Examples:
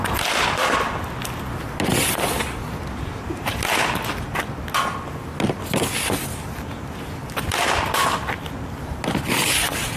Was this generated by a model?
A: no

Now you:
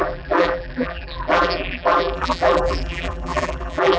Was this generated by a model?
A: yes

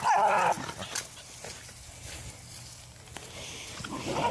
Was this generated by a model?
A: no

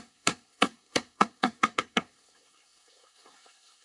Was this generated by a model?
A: yes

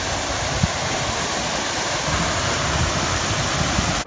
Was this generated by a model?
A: no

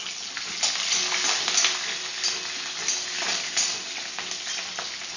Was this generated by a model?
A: no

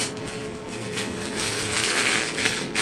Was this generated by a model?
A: yes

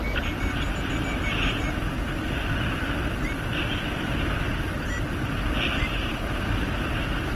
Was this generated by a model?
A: no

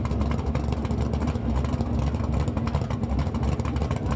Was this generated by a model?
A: no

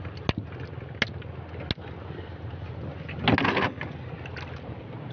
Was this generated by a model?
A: no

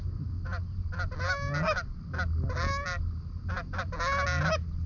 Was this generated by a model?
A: no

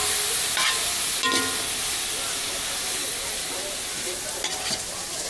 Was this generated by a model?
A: no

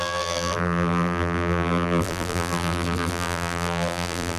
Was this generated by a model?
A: yes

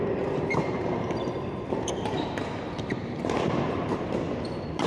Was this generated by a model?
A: yes